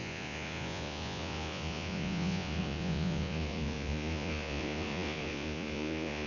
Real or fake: fake